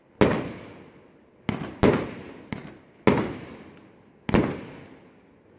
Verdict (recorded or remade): recorded